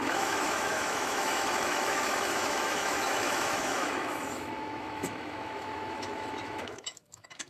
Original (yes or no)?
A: no